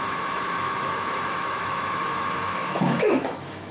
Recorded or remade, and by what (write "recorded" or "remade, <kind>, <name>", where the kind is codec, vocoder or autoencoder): remade, autoencoder, DAC-VAE